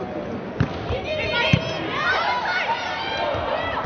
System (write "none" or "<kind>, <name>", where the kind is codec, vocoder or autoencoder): none